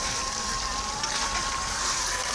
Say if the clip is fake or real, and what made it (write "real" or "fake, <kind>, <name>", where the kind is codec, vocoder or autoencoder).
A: real